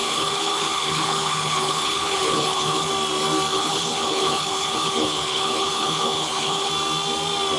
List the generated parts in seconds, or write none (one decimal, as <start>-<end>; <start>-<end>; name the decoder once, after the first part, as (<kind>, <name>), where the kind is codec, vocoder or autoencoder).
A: 0.0-2.9 (codec, HILCodec); 3.5-6.7